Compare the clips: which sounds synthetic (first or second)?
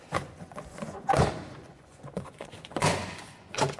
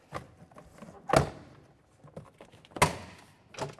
first